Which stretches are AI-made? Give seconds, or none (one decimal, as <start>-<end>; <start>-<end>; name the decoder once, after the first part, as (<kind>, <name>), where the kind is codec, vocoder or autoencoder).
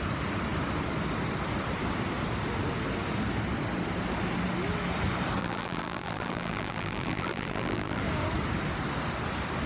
5.4-8.0 (vocoder, BigVGAN v2)